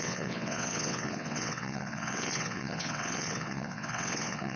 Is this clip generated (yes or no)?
yes